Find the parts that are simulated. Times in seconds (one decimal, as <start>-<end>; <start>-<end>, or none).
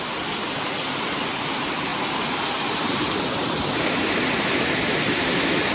none